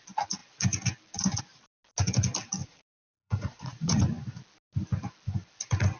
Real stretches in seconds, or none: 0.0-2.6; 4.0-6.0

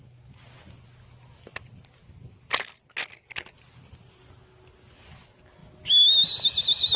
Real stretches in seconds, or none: 0.0-7.0

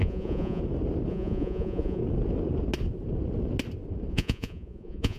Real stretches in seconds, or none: 0.6-1.1; 2.0-4.1

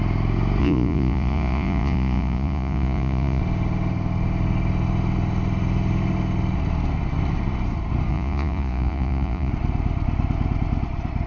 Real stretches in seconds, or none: 0.0-0.6; 3.4-8.1; 9.5-11.3

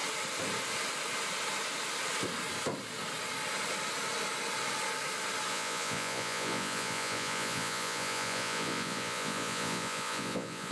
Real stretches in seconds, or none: 0.0-5.5